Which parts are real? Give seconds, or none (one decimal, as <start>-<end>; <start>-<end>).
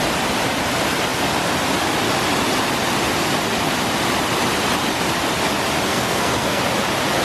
0.0-5.9; 6.6-7.2